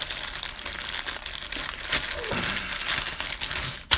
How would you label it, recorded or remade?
recorded